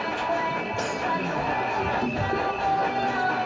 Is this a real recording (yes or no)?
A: yes